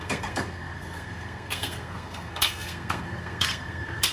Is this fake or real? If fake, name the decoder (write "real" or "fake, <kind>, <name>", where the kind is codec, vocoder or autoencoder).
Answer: fake, codec, SNAC